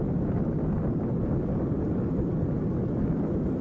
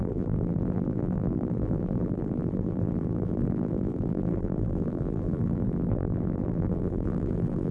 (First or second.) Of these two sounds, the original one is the first